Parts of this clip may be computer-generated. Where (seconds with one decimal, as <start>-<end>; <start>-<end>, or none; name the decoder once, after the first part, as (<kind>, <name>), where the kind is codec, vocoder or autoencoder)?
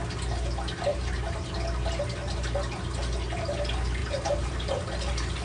0.9-1.5 (vocoder, BigVGAN v2); 4.0-4.7